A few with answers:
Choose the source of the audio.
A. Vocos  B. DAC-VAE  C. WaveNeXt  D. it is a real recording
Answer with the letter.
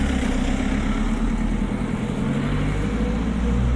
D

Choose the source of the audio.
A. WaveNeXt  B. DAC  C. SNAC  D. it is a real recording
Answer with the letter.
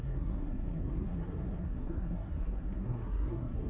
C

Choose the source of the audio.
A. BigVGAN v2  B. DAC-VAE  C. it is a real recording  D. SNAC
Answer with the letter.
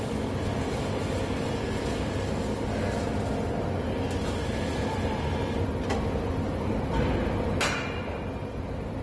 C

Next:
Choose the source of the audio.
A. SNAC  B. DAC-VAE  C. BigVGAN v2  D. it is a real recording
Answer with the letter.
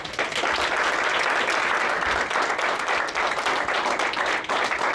D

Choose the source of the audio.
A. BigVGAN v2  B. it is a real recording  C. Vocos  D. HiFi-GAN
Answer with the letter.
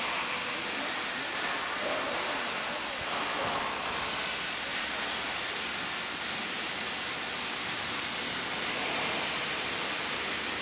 B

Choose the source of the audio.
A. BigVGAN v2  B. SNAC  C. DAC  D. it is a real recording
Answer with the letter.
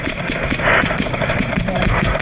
A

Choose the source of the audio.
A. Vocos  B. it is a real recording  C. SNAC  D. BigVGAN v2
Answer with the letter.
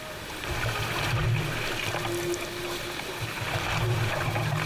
B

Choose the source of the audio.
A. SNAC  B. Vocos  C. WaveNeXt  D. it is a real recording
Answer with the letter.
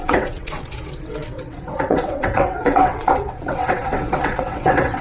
C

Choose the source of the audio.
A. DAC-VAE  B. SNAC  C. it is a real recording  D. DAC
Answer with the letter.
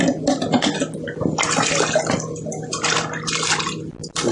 C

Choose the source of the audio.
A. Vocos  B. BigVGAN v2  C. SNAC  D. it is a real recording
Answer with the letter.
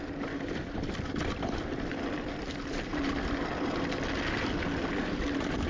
B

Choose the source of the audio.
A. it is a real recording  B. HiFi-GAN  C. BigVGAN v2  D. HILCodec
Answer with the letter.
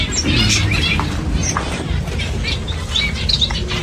A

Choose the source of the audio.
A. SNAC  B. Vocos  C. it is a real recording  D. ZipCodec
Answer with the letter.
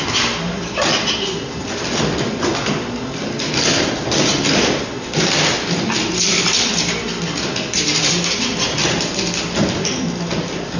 C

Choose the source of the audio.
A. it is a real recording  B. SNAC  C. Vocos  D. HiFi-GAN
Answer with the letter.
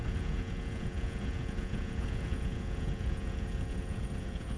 C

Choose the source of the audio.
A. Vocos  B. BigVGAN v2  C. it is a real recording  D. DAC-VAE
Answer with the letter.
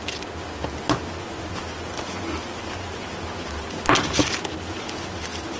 C